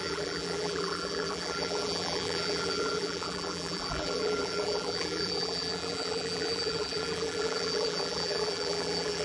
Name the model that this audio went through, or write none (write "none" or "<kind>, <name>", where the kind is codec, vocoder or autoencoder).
vocoder, BigVGAN v2